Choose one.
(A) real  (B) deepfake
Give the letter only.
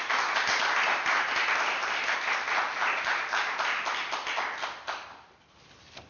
A